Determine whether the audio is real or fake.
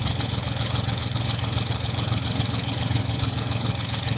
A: fake